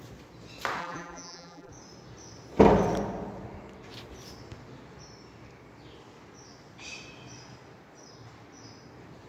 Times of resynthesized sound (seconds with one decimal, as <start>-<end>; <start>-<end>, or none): 0.8-1.7

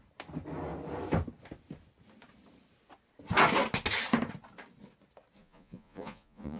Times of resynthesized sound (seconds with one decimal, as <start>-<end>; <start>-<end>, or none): 5.4-6.6

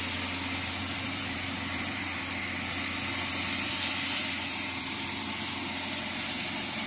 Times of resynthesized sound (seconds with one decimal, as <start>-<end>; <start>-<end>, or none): 0.8-2.2; 4.2-5.2

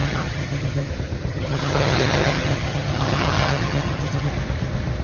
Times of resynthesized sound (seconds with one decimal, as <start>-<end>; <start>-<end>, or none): 0.0-0.9; 1.3-4.3